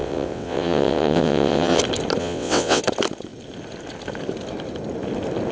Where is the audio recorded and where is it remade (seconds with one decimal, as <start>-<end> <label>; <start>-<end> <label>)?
0.0-1.8 remade; 1.8-2.2 recorded; 2.2-2.8 remade; 2.8-5.5 recorded

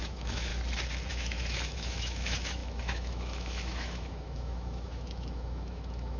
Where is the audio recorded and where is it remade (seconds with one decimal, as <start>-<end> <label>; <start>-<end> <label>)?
0.0-0.5 remade; 0.5-1.1 recorded; 1.1-6.2 remade

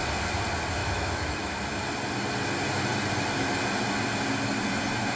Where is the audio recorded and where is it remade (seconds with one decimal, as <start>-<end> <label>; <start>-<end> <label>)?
0.0-0.8 recorded; 0.8-1.6 remade; 1.6-5.2 recorded

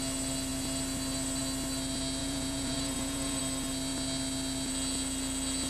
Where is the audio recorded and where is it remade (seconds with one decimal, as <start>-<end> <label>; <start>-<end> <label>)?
0.0-2.2 recorded; 2.2-3.4 remade; 3.4-5.7 recorded

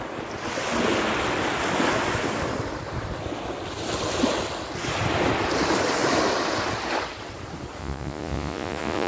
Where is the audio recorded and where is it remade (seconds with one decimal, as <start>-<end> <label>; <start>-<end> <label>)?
0.0-7.8 recorded; 7.8-9.1 remade

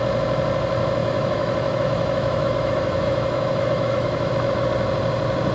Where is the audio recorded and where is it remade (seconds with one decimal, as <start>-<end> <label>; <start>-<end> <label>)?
0.0-1.0 recorded; 1.0-4.3 remade; 4.3-5.5 recorded